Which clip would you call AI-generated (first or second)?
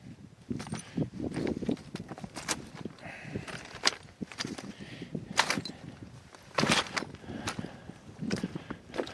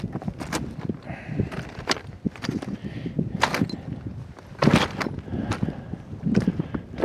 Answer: first